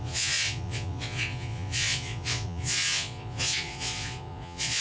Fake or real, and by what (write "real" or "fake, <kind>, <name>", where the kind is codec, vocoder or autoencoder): fake, vocoder, Vocos